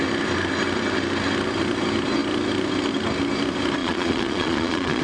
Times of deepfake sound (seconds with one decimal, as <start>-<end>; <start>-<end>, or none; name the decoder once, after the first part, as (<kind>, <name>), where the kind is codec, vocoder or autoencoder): 3.8-5.0 (vocoder, Vocos)